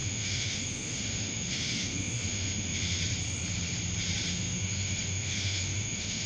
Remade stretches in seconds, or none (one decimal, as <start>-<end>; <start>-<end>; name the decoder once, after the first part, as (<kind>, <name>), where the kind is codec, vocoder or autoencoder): 0.0-3.0 (autoencoder, DAC-VAE); 4.3-6.3